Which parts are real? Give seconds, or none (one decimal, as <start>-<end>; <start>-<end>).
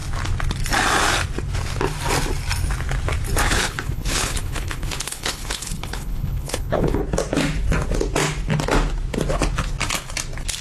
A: 0.0-3.4; 7.0-10.6